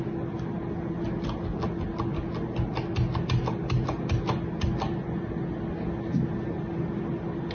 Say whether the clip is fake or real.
real